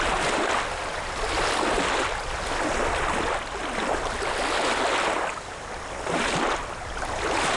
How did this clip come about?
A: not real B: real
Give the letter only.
B